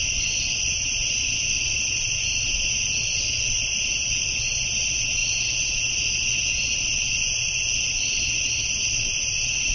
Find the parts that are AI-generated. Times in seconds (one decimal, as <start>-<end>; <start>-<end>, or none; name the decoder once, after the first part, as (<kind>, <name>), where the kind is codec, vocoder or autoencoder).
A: none